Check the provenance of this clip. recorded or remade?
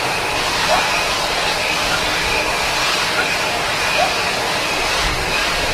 recorded